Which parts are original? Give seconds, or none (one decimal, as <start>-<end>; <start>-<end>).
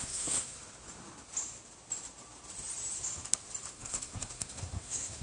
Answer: 0.6-3.7